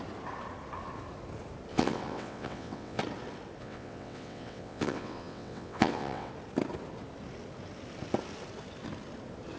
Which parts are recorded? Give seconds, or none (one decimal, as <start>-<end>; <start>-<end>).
0.0-1.7; 3.0-3.6; 6.3-9.6